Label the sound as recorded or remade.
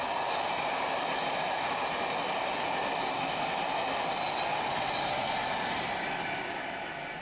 recorded